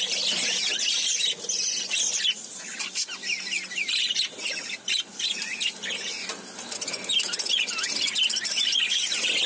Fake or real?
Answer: real